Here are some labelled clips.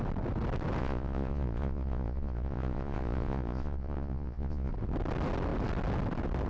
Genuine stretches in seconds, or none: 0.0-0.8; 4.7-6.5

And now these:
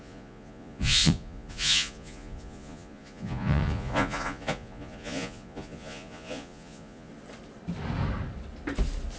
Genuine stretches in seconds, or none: 7.1-9.2

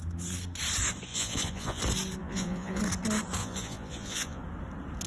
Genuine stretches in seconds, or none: 0.0-1.1; 1.8-2.2; 2.8-3.4; 4.4-5.1

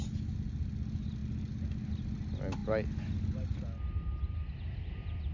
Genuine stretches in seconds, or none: 0.0-5.3

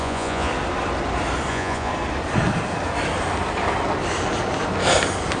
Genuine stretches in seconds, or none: 0.5-1.5; 1.9-5.4

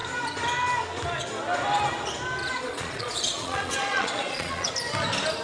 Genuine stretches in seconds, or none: 0.0-2.4; 4.7-5.4

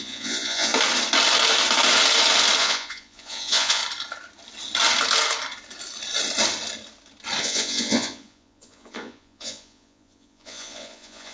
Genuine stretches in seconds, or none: 0.7-2.6; 3.8-7.4

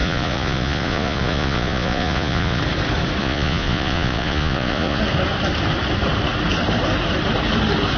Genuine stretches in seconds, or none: 2.6-3.2; 5.0-8.0